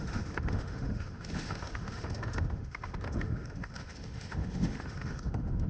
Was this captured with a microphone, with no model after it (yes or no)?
no